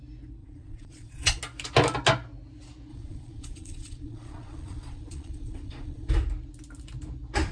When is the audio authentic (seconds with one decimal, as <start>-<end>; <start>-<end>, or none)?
0.0-0.4; 1.4-2.9; 6.1-7.5